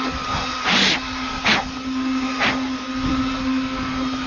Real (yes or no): yes